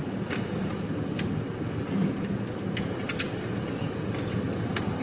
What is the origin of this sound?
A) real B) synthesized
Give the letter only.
A